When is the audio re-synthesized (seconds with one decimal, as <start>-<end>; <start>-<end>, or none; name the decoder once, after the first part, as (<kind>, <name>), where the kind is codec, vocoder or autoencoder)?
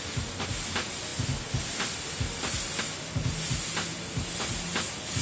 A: none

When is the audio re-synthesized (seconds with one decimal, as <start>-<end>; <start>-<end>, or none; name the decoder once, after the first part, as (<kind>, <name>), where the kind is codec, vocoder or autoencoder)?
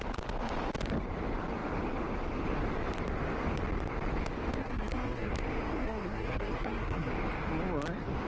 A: 4.6-5.3 (codec, SNAC); 5.7-7.1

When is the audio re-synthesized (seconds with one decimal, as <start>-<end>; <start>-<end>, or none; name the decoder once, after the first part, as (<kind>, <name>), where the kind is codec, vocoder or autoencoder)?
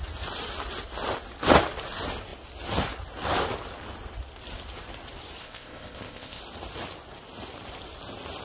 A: 5.4-6.4 (codec, ZipCodec)